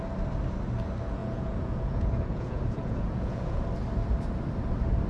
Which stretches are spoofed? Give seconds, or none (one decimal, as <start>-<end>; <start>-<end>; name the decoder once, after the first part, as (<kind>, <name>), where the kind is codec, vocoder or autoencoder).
1.2-3.6 (vocoder, Vocos)